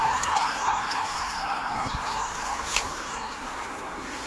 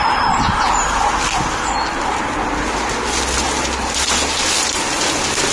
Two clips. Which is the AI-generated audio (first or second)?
first